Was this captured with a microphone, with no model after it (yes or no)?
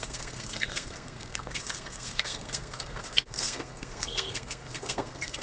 no